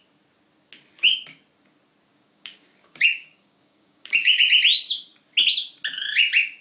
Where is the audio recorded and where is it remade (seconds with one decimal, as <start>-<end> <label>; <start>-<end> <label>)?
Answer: 0.0-2.1 recorded; 2.1-4.4 remade; 4.4-6.6 recorded